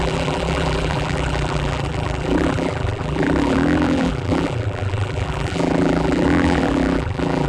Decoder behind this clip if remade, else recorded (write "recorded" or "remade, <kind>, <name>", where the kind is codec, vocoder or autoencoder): remade, vocoder, BigVGAN v2